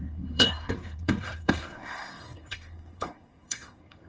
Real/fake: fake